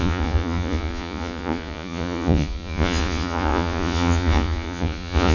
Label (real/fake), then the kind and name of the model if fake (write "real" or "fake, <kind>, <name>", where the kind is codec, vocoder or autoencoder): fake, vocoder, Vocos